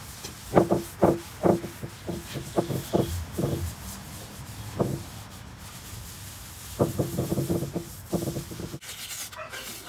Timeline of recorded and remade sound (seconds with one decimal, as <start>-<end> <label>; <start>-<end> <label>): 0.0-9.9 recorded